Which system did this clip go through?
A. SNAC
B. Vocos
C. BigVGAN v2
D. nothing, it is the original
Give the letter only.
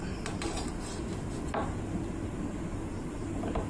D